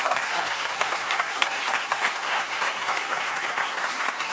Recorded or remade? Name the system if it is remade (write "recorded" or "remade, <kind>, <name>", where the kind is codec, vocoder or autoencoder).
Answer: remade, codec, SNAC